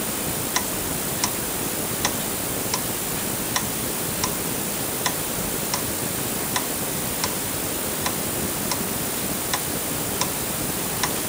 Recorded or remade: recorded